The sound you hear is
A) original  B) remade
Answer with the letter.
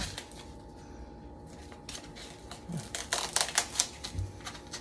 A